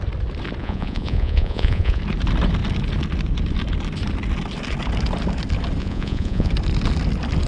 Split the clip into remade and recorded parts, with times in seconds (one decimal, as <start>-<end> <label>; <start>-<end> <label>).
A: 0.0-0.6 recorded; 0.6-2.0 remade; 2.0-5.8 recorded; 5.8-6.5 remade; 6.5-7.5 recorded

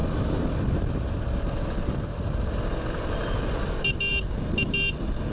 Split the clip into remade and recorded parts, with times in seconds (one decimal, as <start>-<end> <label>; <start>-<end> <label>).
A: 0.0-5.3 recorded

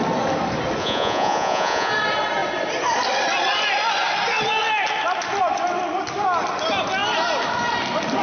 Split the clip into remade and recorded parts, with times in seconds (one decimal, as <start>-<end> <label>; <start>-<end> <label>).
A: 0.0-0.8 recorded; 0.8-1.9 remade; 1.9-8.2 recorded